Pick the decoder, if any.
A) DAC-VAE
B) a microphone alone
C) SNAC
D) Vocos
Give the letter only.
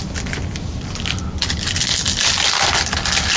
B